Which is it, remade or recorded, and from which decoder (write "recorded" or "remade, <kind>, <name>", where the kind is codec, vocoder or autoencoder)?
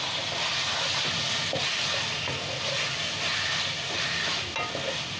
recorded